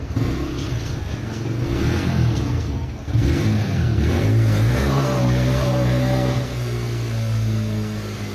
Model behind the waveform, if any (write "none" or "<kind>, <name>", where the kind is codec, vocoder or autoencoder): codec, SNAC